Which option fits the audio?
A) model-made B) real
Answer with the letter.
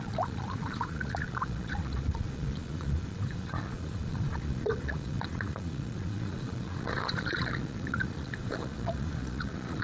A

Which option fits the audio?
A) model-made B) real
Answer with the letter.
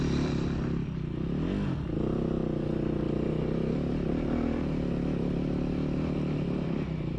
B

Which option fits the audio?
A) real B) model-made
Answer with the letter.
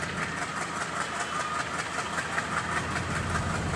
A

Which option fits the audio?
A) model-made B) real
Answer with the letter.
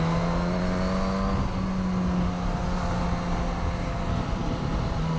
B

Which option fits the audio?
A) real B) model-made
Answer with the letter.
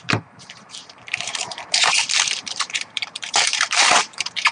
B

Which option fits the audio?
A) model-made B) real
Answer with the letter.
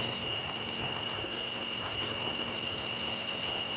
A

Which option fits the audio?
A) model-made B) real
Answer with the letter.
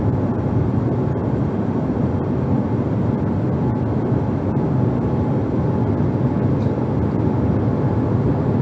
B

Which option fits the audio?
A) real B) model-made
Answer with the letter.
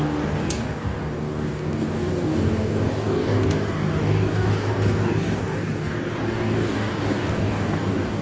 B